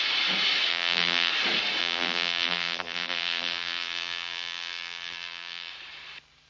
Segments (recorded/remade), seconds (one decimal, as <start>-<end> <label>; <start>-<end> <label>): 0.0-0.7 recorded; 0.7-1.3 remade; 1.3-1.8 recorded; 1.8-5.7 remade; 5.7-6.5 recorded